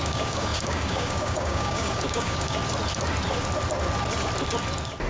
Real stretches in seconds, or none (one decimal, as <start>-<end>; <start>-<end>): 2.6-5.1